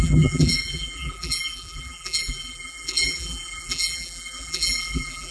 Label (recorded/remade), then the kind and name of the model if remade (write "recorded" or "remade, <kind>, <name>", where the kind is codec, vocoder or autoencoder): remade, vocoder, BigVGAN v2